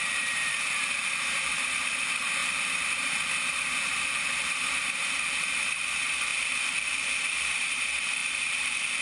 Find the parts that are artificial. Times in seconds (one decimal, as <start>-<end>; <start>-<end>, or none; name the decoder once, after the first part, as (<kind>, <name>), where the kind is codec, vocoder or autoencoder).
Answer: 0.0-6.3 (vocoder, BigVGAN v2); 7.2-9.0